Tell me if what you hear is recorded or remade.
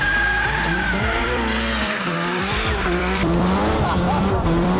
remade